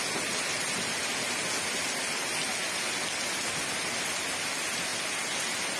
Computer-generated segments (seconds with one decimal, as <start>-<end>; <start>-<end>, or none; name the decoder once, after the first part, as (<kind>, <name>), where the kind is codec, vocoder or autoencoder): none